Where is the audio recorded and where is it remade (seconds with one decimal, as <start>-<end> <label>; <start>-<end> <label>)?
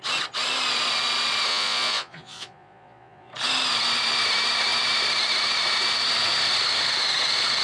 0.0-1.5 recorded; 1.5-3.3 remade; 3.3-7.6 recorded